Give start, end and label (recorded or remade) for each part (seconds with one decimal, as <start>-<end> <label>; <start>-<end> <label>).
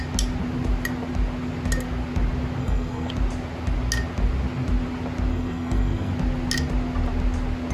0.0-2.6 recorded; 2.6-3.1 remade; 3.1-5.3 recorded; 5.3-6.1 remade; 6.1-7.7 recorded